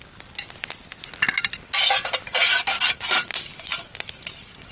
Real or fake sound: real